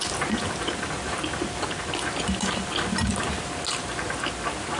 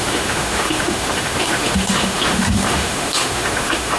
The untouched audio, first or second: first